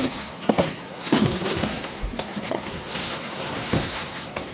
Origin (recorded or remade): remade